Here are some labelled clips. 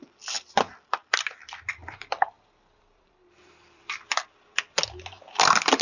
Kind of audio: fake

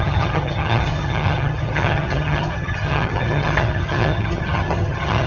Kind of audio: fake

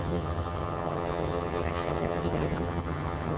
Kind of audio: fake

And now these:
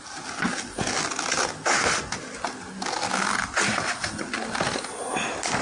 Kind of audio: real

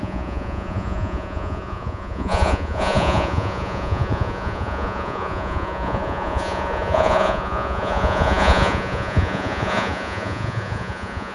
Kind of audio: fake